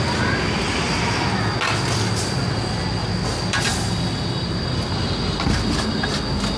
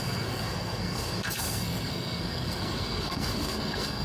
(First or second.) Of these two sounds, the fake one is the second